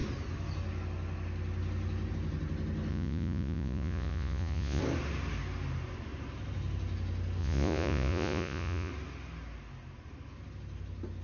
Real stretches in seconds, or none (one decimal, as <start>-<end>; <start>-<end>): 0.0-2.9; 4.8-7.4; 8.9-11.2